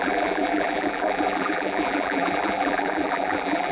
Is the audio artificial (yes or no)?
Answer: yes